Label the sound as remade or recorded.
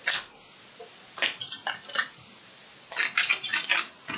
recorded